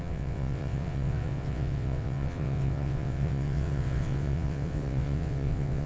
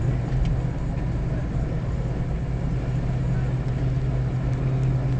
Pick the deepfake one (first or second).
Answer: first